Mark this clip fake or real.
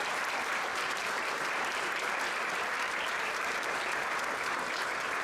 fake